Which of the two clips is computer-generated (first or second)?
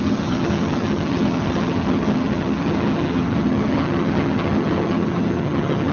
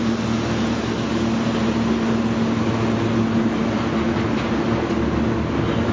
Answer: first